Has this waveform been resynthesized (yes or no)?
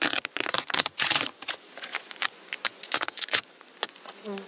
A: yes